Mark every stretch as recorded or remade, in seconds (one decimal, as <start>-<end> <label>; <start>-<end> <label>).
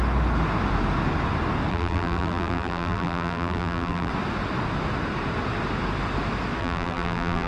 0.0-1.7 recorded; 1.7-4.1 remade; 4.1-6.6 recorded; 6.6-7.5 remade